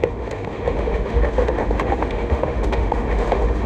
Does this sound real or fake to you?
fake